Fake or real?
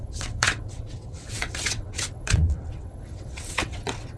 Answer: fake